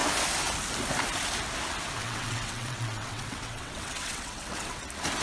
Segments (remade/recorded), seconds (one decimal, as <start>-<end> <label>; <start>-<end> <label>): 0.0-2.0 recorded; 2.0-4.8 remade; 4.8-5.2 recorded